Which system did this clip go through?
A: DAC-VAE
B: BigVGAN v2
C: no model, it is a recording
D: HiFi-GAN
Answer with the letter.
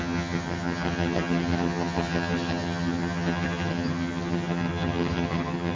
D